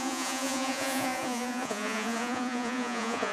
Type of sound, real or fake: fake